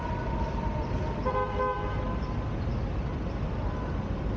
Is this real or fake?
fake